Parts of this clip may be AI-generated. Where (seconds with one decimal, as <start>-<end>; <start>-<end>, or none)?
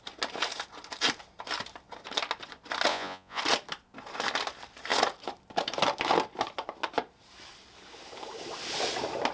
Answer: 2.9-3.4